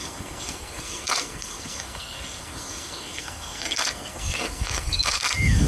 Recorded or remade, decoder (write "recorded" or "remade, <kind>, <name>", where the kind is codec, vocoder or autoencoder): remade, codec, SNAC